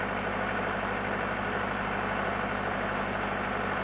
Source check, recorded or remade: recorded